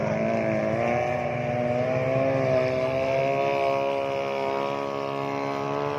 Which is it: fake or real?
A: real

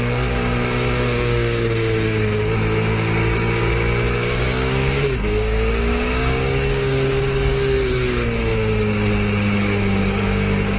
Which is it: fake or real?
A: fake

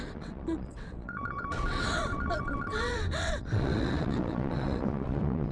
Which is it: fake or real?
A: fake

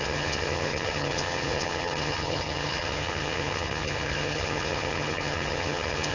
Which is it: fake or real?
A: fake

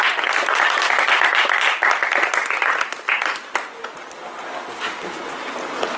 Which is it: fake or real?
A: real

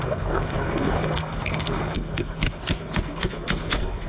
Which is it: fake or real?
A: fake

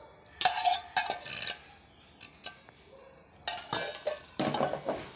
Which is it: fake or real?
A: real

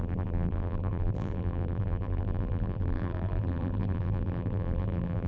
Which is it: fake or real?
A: fake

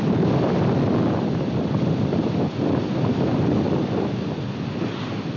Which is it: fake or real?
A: real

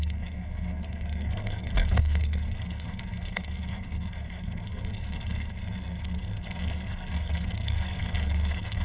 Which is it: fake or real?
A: fake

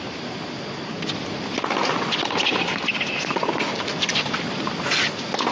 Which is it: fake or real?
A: real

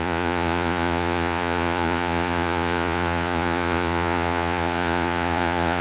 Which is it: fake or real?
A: fake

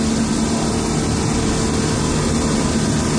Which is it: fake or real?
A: real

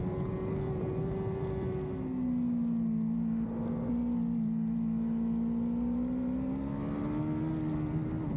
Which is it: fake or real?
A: real